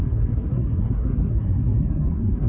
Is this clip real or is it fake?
fake